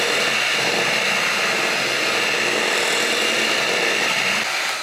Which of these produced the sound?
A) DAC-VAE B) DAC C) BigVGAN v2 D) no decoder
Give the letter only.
D